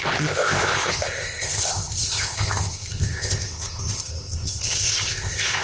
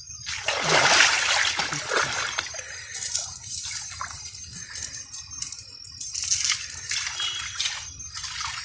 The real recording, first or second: second